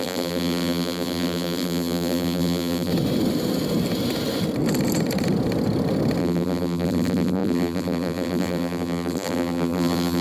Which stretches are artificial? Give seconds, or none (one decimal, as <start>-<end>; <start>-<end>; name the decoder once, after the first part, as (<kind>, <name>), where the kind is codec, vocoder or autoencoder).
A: 0.0-2.9 (vocoder, BigVGAN v2); 6.2-10.2